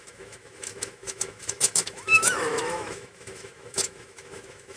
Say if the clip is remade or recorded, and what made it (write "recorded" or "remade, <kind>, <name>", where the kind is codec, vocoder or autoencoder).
remade, autoencoder, DAC-VAE